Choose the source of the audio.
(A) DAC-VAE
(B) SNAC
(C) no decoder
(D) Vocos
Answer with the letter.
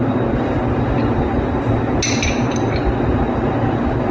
C